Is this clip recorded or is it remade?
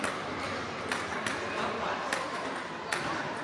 recorded